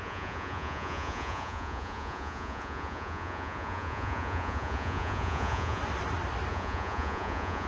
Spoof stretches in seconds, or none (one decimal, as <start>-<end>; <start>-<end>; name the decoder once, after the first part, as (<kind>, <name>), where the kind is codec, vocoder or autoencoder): 0.0-5.8 (vocoder, Vocos); 6.5-7.7